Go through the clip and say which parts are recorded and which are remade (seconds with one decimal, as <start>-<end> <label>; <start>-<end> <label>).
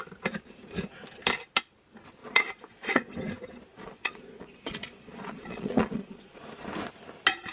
0.0-2.2 recorded; 2.2-3.1 remade; 3.1-3.7 recorded; 3.7-6.4 remade; 6.4-7.5 recorded